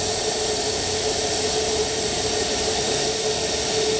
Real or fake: real